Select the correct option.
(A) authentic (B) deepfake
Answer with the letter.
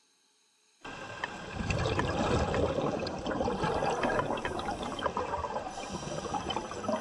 B